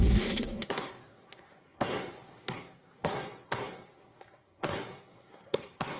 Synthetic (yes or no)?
yes